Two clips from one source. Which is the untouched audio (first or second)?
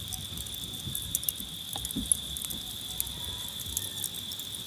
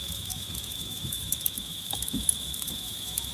first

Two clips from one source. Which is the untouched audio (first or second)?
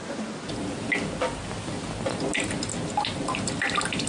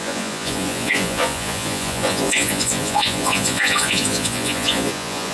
first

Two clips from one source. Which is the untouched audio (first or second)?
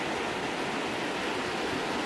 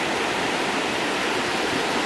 first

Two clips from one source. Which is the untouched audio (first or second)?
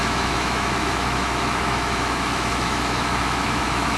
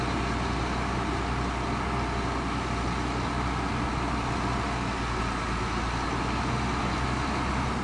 second